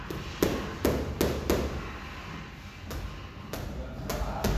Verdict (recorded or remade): recorded